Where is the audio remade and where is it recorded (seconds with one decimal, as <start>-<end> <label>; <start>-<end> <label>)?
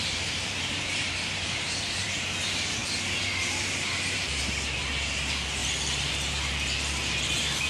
0.0-2.8 remade; 2.8-3.4 recorded; 3.4-7.7 remade